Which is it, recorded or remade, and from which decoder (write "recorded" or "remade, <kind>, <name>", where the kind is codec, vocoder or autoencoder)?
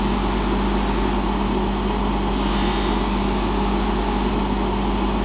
recorded